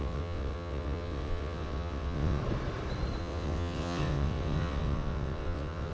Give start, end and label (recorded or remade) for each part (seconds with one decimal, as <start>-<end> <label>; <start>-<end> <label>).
0.0-2.4 remade; 2.4-3.2 recorded; 3.2-5.9 remade